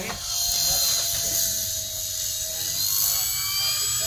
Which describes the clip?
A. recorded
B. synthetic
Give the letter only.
A